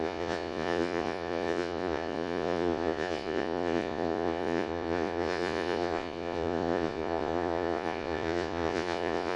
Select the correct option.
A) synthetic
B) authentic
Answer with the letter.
A